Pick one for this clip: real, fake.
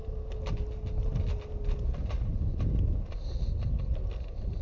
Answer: real